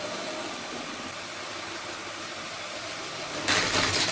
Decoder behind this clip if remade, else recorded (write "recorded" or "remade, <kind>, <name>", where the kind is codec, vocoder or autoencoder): recorded